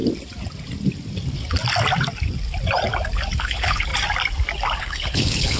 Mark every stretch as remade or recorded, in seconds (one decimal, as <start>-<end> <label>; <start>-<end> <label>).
0.0-3.4 recorded; 3.4-3.9 remade; 3.9-4.8 recorded; 4.8-5.6 remade